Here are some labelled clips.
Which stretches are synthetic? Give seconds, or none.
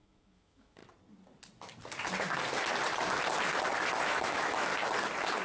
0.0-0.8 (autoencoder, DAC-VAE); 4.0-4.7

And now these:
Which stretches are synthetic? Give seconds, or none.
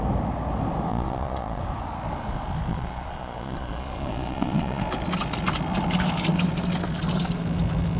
0.9-1.6 (vocoder, Vocos); 2.7-4.8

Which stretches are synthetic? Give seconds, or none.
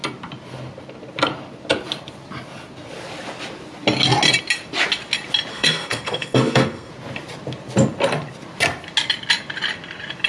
5.5-6.9 (codec, SNAC)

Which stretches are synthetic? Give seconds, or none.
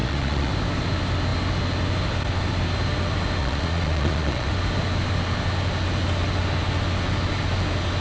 0.0-0.5 (vocoder, Vocos); 3.4-4.5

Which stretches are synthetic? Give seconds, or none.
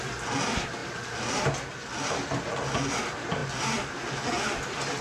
none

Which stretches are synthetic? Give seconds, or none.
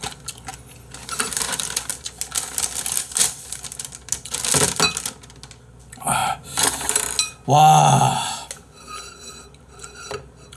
none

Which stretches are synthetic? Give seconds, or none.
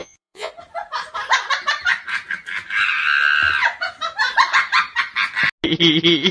0.0-0.5 (vocoder, Vocos)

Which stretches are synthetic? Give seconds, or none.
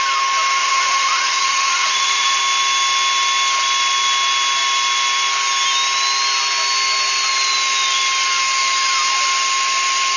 0.6-2.4 (vocoder, Vocos)